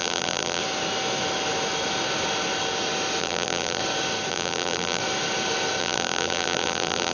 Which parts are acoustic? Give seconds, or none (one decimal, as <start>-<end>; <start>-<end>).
0.6-3.2; 3.8-4.3; 5.0-5.8